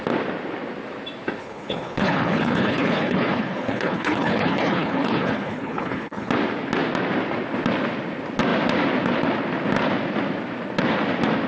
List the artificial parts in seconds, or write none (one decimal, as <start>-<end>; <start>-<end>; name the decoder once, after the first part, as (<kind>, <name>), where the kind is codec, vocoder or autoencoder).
1.4-6.3 (codec, HILCodec)